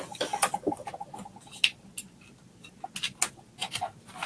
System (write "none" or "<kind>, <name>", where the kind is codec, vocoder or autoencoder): none